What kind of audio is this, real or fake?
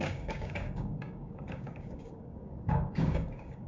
fake